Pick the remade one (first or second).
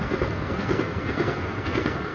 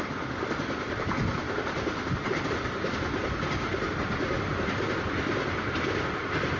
first